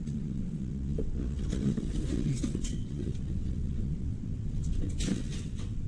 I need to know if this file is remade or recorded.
remade